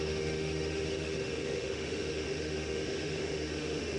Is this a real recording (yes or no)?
no